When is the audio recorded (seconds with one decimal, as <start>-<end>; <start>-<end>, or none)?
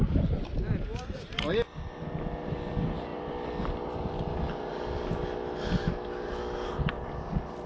0.0-7.7